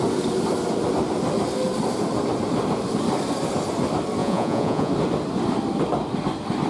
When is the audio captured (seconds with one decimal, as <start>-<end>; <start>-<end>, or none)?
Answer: 0.0-4.2; 4.9-6.7